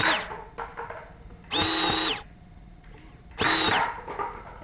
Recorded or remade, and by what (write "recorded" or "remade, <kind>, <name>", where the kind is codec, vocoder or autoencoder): recorded